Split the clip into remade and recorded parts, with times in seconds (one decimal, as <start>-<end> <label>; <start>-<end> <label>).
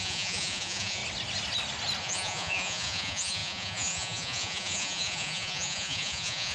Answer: 0.0-1.0 remade; 1.0-2.0 recorded; 2.0-6.5 remade